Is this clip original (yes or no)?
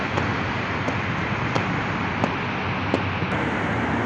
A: yes